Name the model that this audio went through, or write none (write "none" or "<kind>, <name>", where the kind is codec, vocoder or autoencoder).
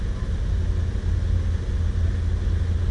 none